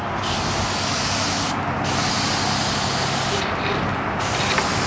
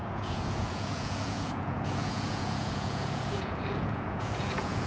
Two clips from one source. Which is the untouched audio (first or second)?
first